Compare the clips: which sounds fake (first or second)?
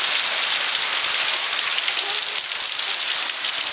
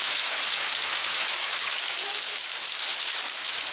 second